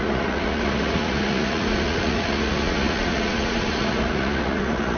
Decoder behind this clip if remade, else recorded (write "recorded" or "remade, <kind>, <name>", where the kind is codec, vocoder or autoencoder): remade, vocoder, Vocos